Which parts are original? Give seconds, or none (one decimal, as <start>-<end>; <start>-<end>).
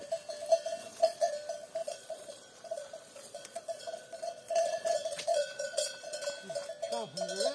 0.0-0.8; 1.3-1.8; 6.2-7.5